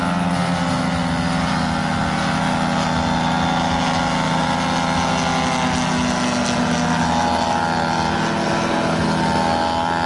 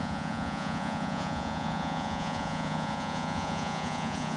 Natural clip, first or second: first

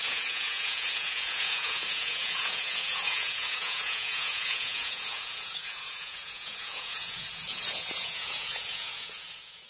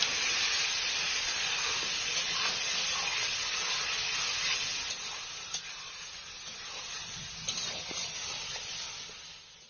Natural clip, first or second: second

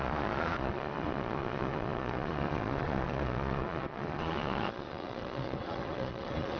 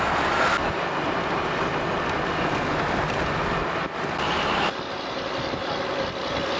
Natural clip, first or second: second